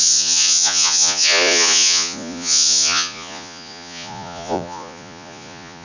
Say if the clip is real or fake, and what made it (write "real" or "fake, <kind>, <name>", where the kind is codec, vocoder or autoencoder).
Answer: fake, vocoder, Vocos